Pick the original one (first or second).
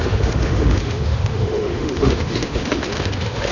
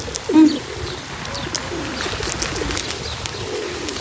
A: second